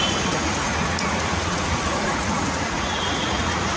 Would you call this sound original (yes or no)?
no